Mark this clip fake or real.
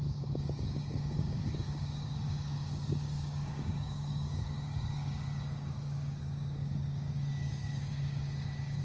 fake